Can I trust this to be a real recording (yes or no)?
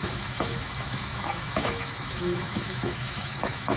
no